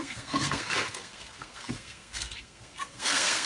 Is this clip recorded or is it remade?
remade